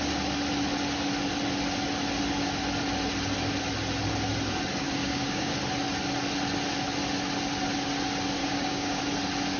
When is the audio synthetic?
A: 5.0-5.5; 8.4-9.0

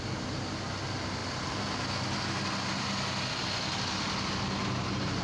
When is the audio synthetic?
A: none